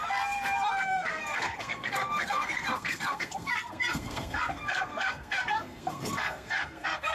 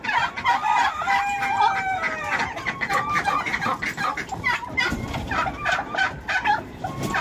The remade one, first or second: first